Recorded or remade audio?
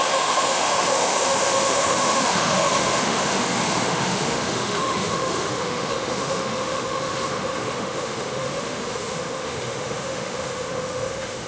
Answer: remade